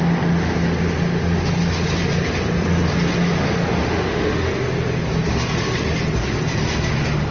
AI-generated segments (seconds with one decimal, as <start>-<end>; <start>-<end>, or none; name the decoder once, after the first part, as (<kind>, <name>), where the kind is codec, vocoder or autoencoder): 3.8-4.5 (autoencoder, DAC-VAE)